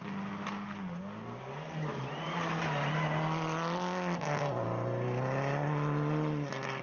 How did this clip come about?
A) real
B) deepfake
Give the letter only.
A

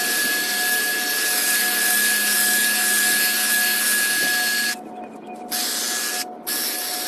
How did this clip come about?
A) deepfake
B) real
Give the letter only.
B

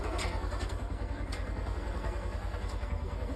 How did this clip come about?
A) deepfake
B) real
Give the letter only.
A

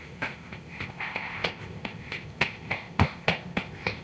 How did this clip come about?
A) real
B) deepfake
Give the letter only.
B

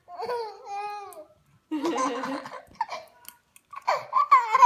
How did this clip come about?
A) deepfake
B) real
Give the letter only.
B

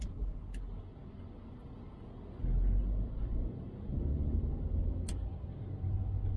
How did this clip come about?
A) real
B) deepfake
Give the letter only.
A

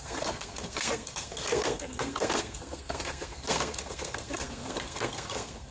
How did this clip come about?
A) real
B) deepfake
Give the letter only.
B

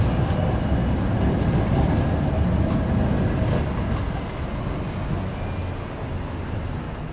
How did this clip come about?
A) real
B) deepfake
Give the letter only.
A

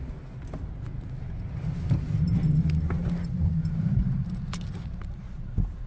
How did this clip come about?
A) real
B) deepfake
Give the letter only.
A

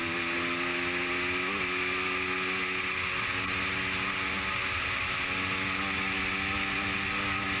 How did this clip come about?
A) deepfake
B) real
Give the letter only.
B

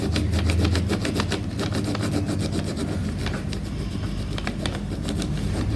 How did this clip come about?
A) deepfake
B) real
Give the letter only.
B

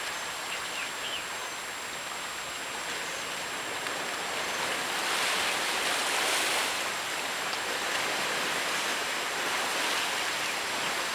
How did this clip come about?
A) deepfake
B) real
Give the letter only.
B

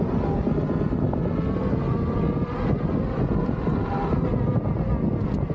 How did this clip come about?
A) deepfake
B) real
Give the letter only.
B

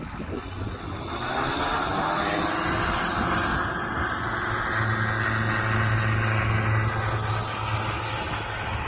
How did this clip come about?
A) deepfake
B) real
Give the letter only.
B